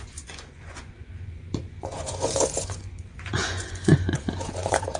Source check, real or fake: fake